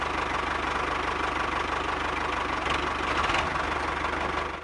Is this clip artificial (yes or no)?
no